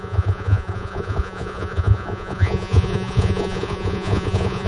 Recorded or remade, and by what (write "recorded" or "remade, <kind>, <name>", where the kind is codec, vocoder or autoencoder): remade, vocoder, Vocos